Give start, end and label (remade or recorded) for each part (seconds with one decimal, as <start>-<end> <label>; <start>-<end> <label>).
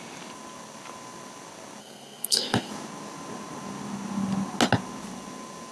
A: 0.0-1.8 recorded; 1.8-2.7 remade; 2.7-5.7 recorded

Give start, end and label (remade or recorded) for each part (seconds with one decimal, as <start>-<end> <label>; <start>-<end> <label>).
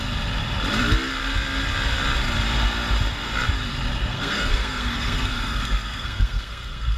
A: 0.0-4.0 recorded; 4.0-7.0 remade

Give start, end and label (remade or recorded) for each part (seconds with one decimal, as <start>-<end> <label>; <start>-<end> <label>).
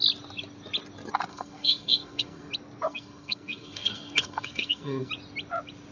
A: 0.0-1.3 recorded; 1.3-2.5 remade; 2.5-2.9 recorded; 2.9-5.1 remade; 5.1-5.9 recorded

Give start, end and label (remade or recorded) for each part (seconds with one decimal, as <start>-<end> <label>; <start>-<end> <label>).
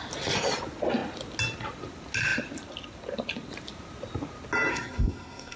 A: 0.0-4.7 recorded; 4.7-5.6 remade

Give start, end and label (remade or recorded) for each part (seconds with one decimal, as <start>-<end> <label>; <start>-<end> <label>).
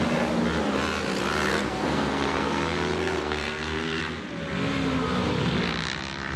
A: 0.0-1.5 recorded; 1.5-4.0 remade; 4.0-6.4 recorded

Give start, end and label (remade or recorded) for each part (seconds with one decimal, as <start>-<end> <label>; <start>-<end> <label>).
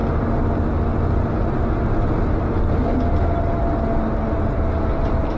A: 0.0-5.4 recorded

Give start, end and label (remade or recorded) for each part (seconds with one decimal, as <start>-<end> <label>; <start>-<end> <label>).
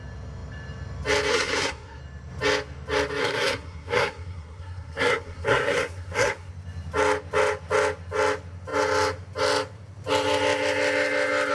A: 0.0-1.3 recorded; 1.3-2.0 remade; 2.0-3.2 recorded; 3.2-6.5 remade; 6.5-11.5 recorded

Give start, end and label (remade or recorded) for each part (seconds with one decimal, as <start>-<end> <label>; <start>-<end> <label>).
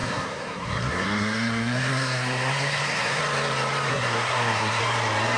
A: 0.0-3.2 remade; 3.2-3.9 recorded; 3.9-4.8 remade; 4.8-5.4 recorded